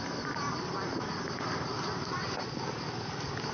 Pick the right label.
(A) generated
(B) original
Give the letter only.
B